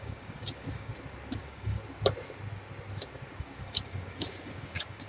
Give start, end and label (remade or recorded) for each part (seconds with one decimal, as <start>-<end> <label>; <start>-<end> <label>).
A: 0.0-0.9 remade; 0.9-1.4 recorded; 1.4-1.8 remade; 1.8-3.4 recorded; 3.4-5.1 remade